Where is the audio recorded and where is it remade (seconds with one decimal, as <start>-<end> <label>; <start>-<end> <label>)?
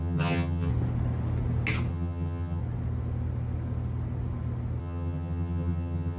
0.0-0.7 remade; 0.7-1.9 recorded; 1.9-2.6 remade; 2.6-4.8 recorded; 4.8-6.2 remade